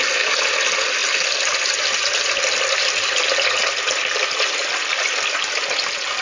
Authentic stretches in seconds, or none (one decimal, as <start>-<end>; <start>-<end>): 0.0-6.2